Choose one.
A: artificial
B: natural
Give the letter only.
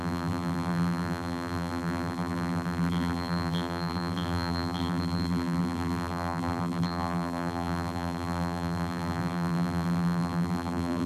A